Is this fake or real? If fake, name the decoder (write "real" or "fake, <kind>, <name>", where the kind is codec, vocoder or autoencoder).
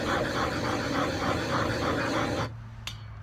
real